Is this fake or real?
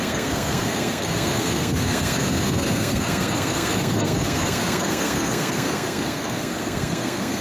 fake